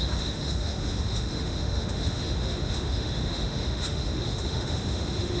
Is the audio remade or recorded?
remade